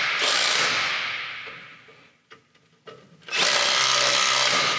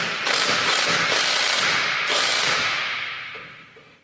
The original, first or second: first